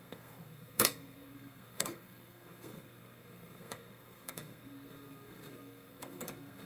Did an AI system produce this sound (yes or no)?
yes